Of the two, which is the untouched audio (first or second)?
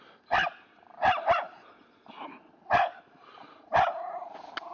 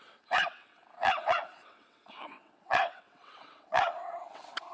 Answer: first